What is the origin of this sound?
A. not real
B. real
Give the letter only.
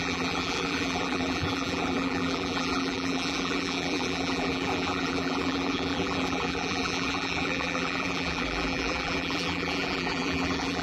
A